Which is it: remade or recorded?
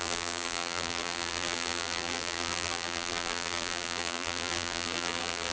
remade